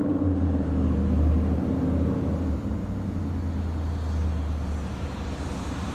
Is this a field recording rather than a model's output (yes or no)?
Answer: yes